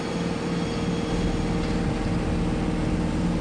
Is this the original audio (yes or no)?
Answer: yes